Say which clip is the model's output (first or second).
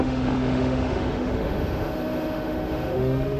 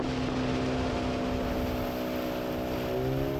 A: first